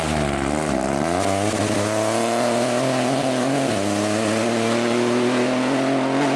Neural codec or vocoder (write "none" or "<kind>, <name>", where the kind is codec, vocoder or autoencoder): none